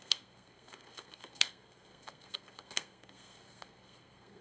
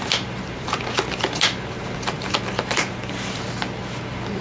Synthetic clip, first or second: first